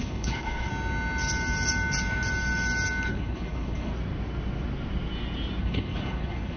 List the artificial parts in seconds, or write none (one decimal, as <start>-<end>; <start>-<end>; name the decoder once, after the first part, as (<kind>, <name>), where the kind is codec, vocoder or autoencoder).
0.0-0.7 (codec, HILCodec); 3.1-3.9; 5.6-6.6